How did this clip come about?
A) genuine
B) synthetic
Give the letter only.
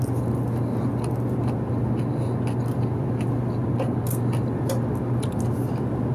A